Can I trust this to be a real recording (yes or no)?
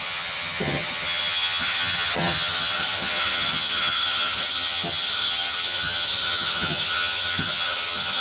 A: no